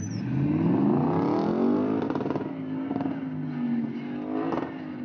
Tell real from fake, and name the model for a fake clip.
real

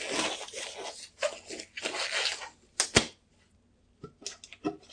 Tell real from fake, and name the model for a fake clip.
real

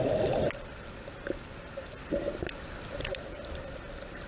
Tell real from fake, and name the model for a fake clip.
real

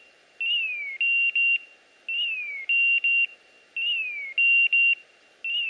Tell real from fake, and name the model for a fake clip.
real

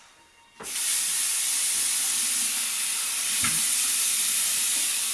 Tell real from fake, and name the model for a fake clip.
real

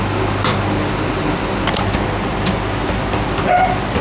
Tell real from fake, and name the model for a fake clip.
real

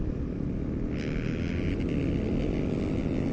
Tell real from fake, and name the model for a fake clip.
real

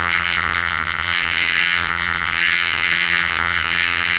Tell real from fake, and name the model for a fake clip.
fake, vocoder, HiFi-GAN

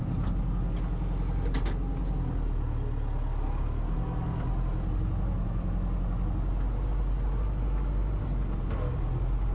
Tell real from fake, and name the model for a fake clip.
real